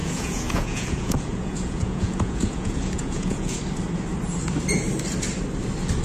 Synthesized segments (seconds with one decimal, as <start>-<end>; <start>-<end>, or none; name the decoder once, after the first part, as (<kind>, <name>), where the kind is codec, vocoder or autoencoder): 0.0-3.6 (vocoder, Vocos)